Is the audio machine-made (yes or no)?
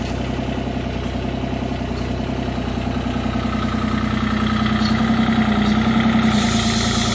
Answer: no